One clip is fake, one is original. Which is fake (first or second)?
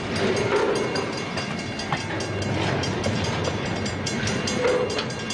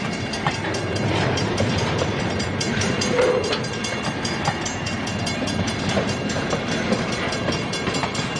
second